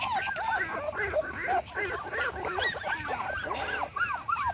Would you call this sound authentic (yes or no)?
yes